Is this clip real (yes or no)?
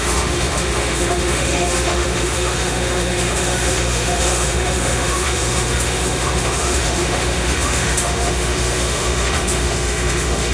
no